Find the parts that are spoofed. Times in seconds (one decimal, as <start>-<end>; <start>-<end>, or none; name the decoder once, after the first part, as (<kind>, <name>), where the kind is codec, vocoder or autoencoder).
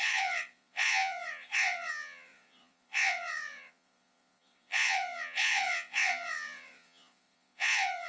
0.0-8.1 (vocoder, Vocos)